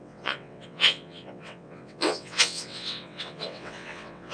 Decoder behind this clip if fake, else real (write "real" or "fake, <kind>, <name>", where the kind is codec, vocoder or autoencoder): fake, vocoder, WaveNeXt